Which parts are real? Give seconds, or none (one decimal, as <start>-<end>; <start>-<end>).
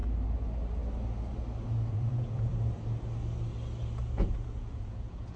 0.0-1.9; 2.5-4.0